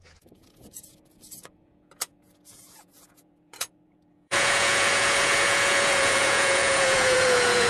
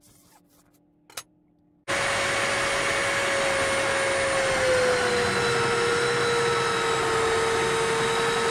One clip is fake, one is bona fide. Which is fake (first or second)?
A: first